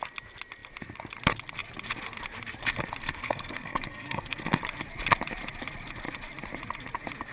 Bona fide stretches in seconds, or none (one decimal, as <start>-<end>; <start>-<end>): 0.0-3.0; 4.6-7.3